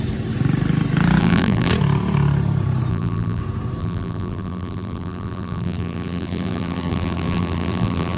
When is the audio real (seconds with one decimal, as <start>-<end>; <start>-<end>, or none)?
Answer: 0.0-1.2; 1.7-2.9; 3.4-3.8